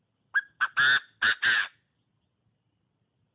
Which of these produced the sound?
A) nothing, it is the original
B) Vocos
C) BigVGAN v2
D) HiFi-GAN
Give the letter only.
A